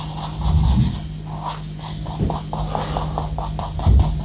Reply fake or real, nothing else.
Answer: real